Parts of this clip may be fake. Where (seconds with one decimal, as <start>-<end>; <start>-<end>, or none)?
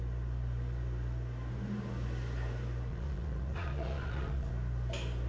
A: 2.9-4.5